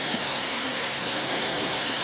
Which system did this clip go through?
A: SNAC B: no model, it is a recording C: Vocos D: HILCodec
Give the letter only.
A